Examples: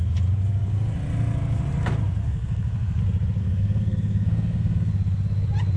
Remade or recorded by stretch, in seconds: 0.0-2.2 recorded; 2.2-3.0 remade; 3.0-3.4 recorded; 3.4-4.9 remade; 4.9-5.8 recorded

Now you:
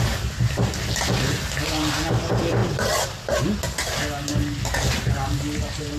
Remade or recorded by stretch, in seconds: 0.0-2.6 recorded; 2.6-3.3 remade; 3.3-6.0 recorded

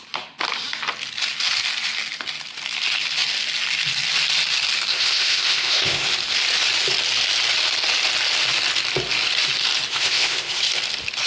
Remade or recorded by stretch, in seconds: 0.0-4.9 recorded; 4.9-6.1 remade; 6.1-9.9 recorded; 9.9-10.6 remade; 10.6-11.3 recorded

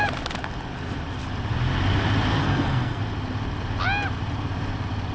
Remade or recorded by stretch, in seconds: 0.0-2.4 recorded; 2.4-3.0 remade; 3.0-5.1 recorded

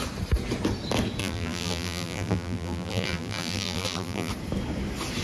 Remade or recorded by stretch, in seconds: 0.0-1.2 recorded; 1.2-4.3 remade; 4.3-5.2 recorded

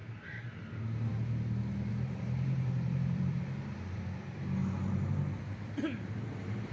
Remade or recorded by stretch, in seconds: 0.0-1.9 recorded; 1.9-3.4 remade; 3.4-6.7 recorded

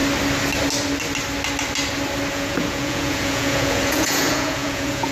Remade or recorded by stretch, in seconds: 0.0-2.3 recorded; 2.3-5.1 remade